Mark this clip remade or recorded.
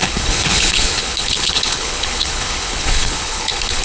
remade